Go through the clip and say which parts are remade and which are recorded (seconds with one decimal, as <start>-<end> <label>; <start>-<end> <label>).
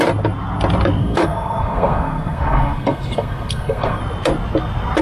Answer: 0.0-1.0 recorded; 1.0-4.0 remade; 4.0-5.0 recorded